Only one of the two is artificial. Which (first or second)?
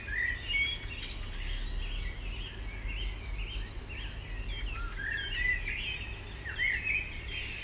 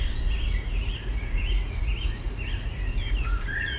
second